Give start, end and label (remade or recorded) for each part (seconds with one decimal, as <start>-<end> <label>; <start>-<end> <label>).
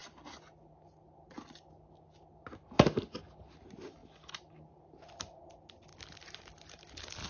0.0-7.3 recorded